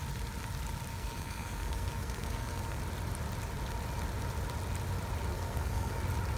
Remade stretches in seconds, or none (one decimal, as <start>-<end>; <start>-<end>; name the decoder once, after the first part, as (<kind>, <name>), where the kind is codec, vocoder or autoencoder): 0.9-2.8 (codec, SNAC); 5.3-6.0